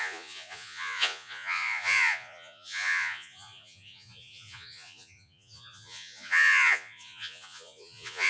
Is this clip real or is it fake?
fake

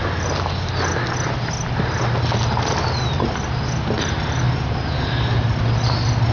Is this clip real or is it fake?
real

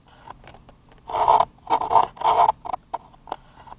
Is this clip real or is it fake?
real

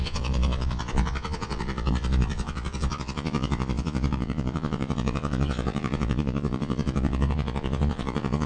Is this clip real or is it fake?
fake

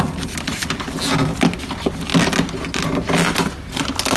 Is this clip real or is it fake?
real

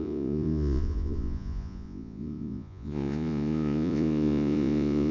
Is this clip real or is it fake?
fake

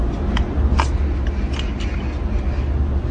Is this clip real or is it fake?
real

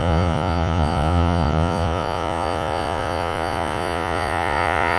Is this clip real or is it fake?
fake